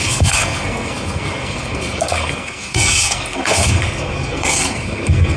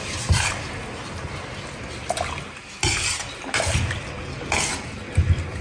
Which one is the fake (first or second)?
first